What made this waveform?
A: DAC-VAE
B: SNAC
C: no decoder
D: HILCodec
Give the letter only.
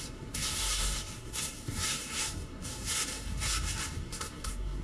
B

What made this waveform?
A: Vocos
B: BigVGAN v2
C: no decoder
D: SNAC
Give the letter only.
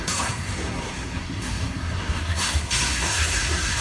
D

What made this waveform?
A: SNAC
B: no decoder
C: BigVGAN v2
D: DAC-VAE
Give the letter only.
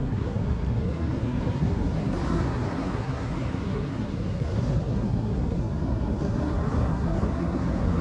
A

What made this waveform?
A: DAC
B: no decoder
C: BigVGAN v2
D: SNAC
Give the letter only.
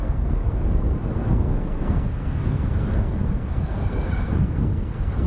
D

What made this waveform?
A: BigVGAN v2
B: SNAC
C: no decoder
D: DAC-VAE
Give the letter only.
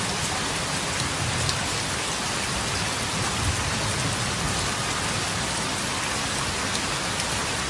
C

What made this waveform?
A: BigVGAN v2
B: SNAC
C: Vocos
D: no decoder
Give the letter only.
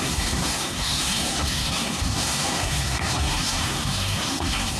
B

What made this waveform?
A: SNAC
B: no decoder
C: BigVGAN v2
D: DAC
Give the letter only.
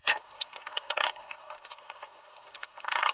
A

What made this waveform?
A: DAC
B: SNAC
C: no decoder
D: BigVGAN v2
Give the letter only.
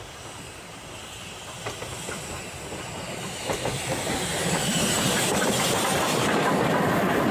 C